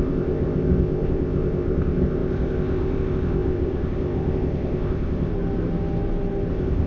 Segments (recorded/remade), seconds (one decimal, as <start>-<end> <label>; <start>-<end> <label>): 0.0-5.3 remade; 5.3-6.5 recorded; 6.5-6.9 remade